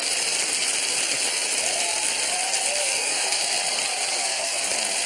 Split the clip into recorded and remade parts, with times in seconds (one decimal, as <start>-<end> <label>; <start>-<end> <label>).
0.0-2.8 recorded; 2.8-3.4 remade; 3.4-4.1 recorded; 4.1-4.6 remade; 4.6-5.1 recorded